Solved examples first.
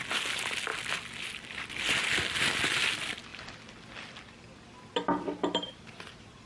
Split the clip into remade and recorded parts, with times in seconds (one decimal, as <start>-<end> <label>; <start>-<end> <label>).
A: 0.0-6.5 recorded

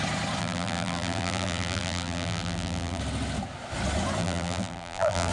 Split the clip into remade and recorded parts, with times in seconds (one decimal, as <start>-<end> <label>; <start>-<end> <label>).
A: 0.0-0.4 recorded; 0.4-3.0 remade; 3.0-4.2 recorded; 4.2-5.3 remade

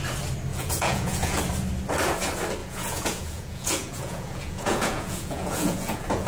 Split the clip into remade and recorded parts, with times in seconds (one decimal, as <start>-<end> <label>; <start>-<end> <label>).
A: 0.0-0.5 recorded; 0.5-1.4 remade; 1.4-2.6 recorded; 2.6-6.3 remade